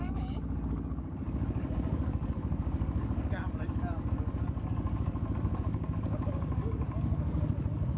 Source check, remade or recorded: remade